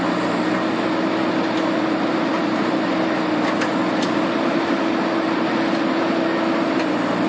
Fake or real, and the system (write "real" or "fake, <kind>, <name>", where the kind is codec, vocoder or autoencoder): real